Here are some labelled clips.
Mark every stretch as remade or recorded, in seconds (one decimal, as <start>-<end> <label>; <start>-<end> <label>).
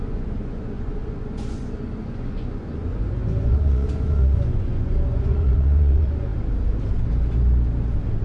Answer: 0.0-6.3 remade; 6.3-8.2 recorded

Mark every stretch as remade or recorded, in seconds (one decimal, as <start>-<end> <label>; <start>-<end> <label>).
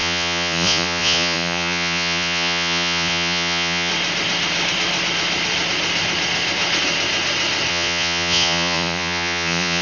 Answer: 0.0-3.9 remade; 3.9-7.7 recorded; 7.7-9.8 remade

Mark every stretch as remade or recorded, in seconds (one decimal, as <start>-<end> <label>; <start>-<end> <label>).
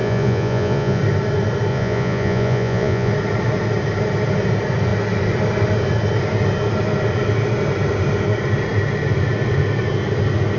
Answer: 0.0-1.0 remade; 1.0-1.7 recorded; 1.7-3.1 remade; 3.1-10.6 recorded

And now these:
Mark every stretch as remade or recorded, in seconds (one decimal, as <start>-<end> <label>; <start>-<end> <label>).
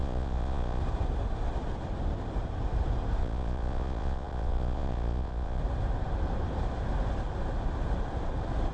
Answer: 0.0-0.8 remade; 0.8-3.2 recorded; 3.2-5.6 remade; 5.6-8.7 recorded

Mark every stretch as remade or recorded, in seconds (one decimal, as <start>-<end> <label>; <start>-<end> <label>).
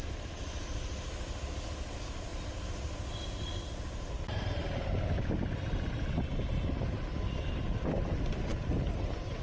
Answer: 0.0-9.4 recorded